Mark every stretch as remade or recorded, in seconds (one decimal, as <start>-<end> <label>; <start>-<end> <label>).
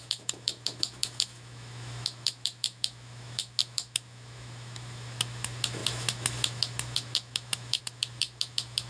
0.0-8.9 remade